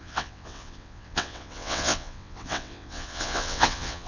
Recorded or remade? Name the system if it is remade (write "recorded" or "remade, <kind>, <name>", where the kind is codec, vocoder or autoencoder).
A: remade, vocoder, WaveNeXt